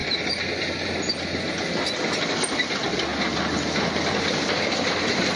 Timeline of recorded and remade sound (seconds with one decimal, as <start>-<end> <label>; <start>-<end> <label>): 0.0-5.4 recorded